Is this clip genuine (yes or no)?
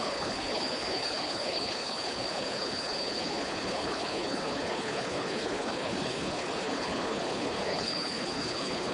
no